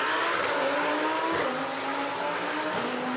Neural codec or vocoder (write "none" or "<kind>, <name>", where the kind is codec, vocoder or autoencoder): none